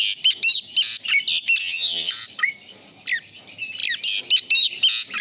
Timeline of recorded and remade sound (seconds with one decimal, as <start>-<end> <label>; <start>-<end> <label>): 0.0-1.6 recorded; 1.6-2.1 remade; 2.1-5.2 recorded